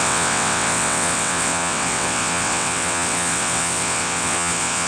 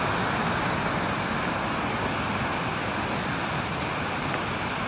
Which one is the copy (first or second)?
first